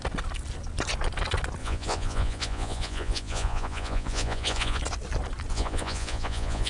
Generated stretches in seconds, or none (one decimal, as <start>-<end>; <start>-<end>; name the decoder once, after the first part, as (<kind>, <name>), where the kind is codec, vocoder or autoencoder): 1.6-4.8 (vocoder, Vocos); 5.5-6.7